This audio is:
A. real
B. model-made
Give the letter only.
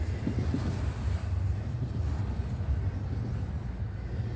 A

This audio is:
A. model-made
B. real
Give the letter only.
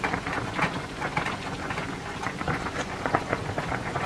A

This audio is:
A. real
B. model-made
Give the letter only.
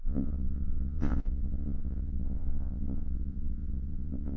B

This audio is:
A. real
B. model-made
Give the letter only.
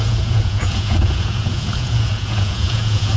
B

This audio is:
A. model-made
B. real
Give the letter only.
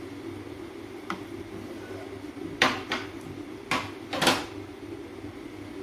B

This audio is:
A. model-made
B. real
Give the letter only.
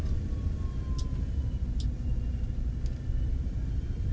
B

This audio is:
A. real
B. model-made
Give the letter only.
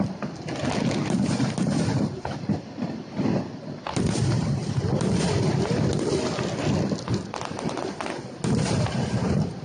A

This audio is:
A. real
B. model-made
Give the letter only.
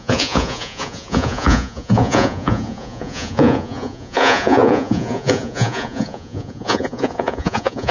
B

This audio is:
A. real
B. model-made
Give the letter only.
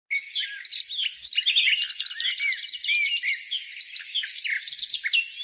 A